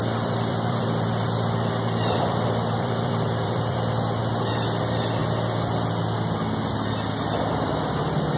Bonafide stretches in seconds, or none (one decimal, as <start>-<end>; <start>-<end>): 4.2-4.8; 5.2-7.4